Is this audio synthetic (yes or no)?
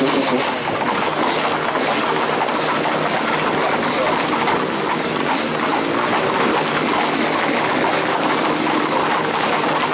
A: no